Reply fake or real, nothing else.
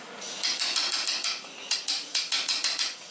fake